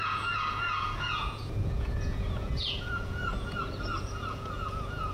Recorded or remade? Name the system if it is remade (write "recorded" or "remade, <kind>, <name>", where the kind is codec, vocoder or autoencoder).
remade, vocoder, Vocos